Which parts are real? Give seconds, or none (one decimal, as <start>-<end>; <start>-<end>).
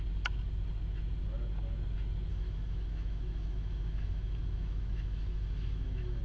0.0-2.3